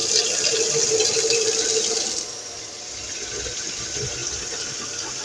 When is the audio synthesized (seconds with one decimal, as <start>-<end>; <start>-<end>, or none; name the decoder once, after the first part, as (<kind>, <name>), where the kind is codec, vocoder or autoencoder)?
none